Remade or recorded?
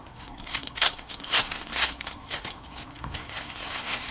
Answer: remade